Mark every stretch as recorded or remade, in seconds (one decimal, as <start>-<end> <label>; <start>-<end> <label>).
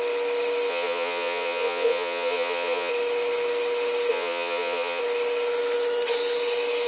0.0-0.7 recorded; 0.7-2.9 remade; 2.9-4.1 recorded; 4.1-5.0 remade; 5.0-6.9 recorded